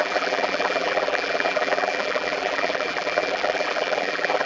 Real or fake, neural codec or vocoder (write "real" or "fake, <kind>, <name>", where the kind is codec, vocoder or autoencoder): fake, vocoder, BigVGAN v2